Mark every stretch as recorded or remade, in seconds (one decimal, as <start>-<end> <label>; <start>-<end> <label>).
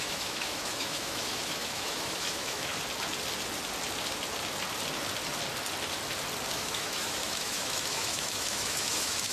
0.0-2.7 remade; 2.7-6.5 recorded; 6.5-9.3 remade